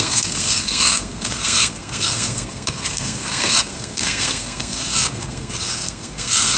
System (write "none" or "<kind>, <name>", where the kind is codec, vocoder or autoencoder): codec, SNAC